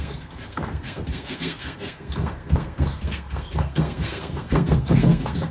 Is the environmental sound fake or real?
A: fake